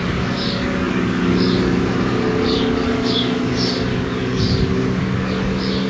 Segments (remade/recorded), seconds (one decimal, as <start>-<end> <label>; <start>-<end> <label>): 0.0-3.5 remade; 3.5-3.9 recorded; 3.9-5.9 remade